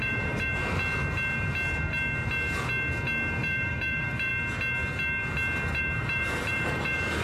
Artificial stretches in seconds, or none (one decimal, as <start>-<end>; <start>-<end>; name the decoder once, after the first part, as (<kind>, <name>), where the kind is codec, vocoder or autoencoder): 0.0-0.6 (vocoder, BigVGAN v2); 3.4-4.3; 5.8-7.2

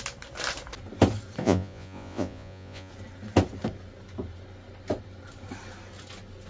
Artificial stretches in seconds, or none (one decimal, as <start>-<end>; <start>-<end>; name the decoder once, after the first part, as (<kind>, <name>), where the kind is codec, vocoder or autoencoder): 1.4-2.9 (vocoder, Vocos)

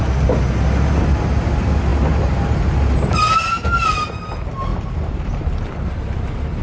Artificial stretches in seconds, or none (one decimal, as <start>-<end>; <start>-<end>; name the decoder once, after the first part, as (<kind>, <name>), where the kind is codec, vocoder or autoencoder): 4.7-6.6 (vocoder, BigVGAN v2)

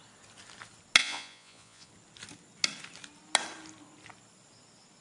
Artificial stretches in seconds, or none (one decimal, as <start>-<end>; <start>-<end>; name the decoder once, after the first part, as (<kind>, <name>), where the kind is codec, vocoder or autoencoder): 1.0-1.9 (vocoder, Vocos)

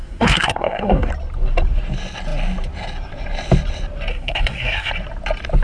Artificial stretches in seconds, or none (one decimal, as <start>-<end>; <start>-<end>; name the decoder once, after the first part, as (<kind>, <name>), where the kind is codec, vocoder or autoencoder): 0.0-1.1 (codec, SNAC); 4.1-4.9

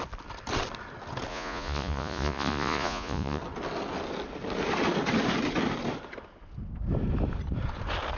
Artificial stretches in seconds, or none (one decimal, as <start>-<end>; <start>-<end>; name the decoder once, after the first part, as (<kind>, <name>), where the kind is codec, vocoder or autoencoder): 1.3-3.4 (vocoder, Vocos)

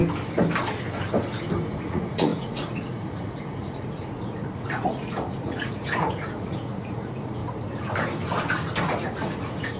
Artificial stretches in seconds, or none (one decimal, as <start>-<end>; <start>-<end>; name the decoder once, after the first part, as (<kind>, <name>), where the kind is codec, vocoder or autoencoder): 1.8-7.4 (vocoder, Vocos); 8.8-9.8